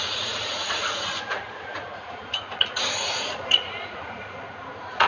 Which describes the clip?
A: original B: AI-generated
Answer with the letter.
B